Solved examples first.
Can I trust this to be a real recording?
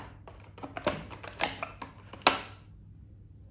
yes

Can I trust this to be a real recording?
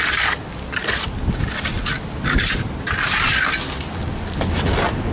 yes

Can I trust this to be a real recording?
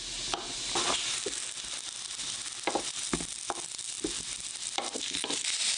yes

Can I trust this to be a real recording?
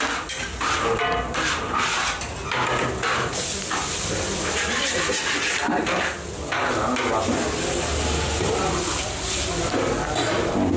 yes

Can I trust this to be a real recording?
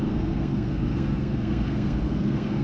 no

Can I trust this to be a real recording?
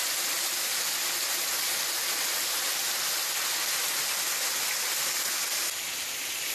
yes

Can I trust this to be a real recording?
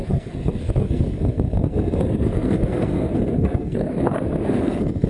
no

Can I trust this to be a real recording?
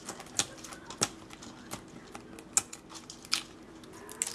yes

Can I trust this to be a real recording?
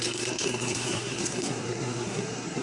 no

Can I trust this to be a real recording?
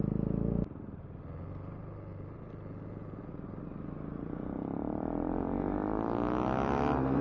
yes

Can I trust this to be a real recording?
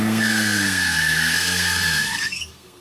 no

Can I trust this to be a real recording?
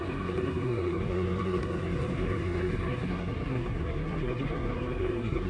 no